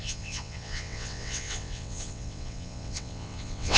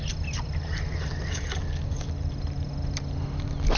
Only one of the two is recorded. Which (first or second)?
second